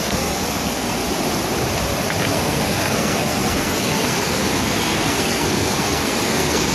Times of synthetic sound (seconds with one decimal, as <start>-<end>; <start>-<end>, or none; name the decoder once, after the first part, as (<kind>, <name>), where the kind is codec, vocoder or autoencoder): 0.0-1.0 (codec, SNAC); 2.2-6.7